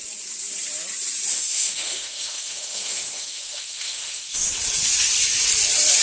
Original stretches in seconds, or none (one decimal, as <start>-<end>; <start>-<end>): 0.0-1.3; 4.5-6.0